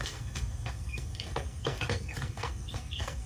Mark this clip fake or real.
fake